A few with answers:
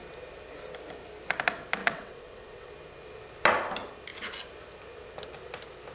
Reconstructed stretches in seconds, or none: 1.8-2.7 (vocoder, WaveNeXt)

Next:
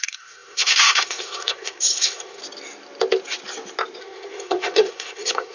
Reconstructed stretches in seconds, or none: 0.0-2.4 (codec, SNAC); 4.0-5.5

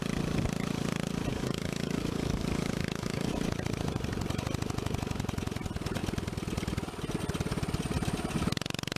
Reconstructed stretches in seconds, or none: 1.3-3.3 (codec, DAC)

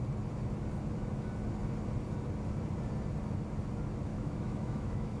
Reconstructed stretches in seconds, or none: 4.1-5.2 (autoencoder, DAC-VAE)

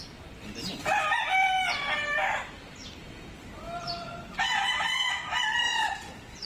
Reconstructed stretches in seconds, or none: 0.4-1.1 (vocoder, BigVGAN v2); 5.7-6.5

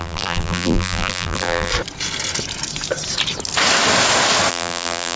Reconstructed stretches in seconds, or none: 0.0-1.7 (vocoder, BigVGAN v2); 4.5-5.2